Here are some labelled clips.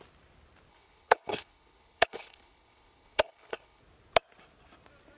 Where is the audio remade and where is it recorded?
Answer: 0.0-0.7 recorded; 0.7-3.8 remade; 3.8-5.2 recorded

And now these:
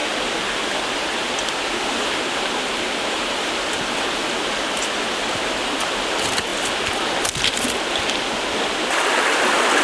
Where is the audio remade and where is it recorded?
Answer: 0.0-9.8 recorded

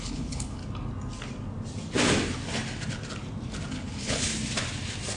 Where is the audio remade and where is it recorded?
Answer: 0.0-0.6 remade; 0.6-3.7 recorded; 3.7-4.3 remade; 4.3-5.2 recorded

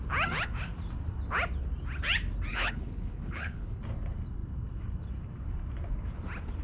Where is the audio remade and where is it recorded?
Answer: 0.0-2.5 recorded; 2.5-3.8 remade; 3.8-6.6 recorded

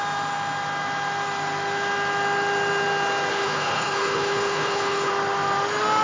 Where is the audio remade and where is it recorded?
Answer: 0.0-3.3 recorded; 3.3-5.1 remade; 5.1-6.0 recorded

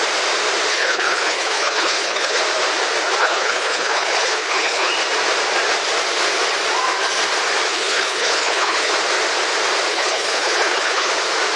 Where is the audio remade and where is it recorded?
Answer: 0.0-0.7 recorded; 0.7-2.4 remade; 2.4-3.2 recorded; 3.2-4.9 remade; 4.9-7.7 recorded; 7.7-8.9 remade; 8.9-9.9 recorded; 9.9-11.1 remade; 11.1-11.6 recorded

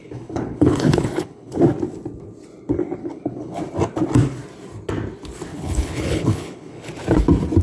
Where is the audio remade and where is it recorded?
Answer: 0.0-1.6 remade; 1.6-3.0 recorded; 3.0-3.6 remade; 3.6-5.5 recorded; 5.5-6.9 remade; 6.9-7.6 recorded